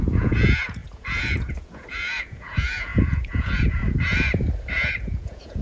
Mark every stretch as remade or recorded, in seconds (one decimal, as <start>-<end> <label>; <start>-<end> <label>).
0.0-3.8 remade; 3.8-4.9 recorded; 4.9-5.6 remade